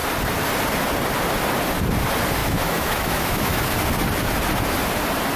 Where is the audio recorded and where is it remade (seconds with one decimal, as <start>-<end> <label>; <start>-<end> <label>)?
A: 0.0-2.4 recorded; 2.4-3.7 remade; 3.7-5.4 recorded